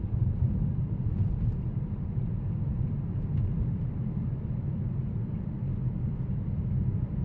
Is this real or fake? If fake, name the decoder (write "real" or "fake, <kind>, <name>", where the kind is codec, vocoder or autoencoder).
fake, vocoder, BigVGAN v2